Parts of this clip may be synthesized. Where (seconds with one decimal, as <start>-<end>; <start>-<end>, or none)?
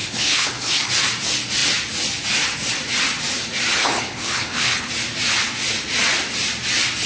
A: 0.0-0.9; 3.8-4.9